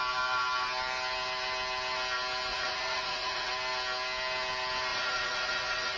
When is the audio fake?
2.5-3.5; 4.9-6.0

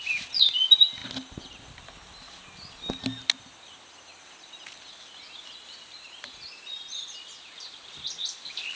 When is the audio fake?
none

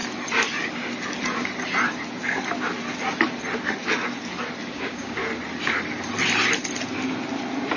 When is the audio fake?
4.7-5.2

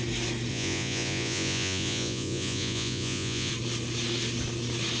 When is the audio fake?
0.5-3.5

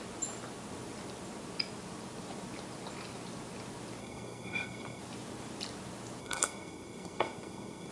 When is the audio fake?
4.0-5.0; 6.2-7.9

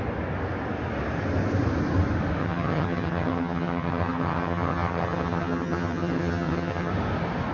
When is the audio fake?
2.4-6.9